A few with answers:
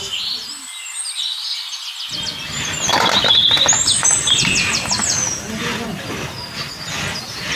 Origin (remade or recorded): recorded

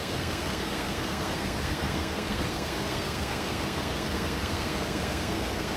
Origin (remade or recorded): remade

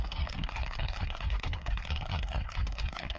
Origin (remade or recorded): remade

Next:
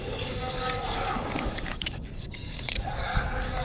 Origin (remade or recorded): remade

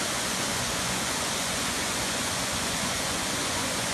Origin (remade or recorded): remade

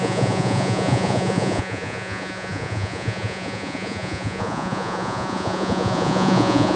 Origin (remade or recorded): remade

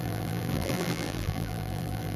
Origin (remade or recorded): remade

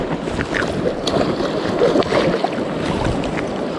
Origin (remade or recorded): recorded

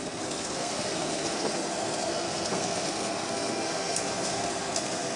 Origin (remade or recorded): remade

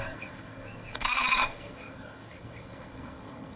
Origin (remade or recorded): remade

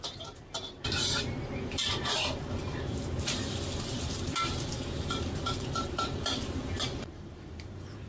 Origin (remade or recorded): remade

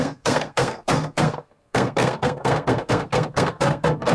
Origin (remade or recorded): remade